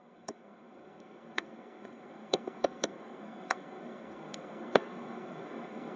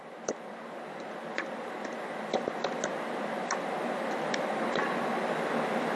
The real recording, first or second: second